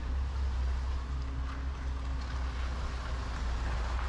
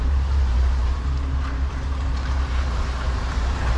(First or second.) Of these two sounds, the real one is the first